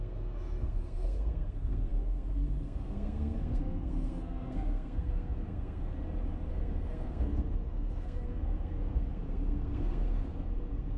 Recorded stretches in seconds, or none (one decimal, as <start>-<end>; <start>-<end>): 5.9-6.5